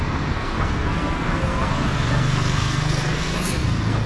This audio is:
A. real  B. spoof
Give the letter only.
B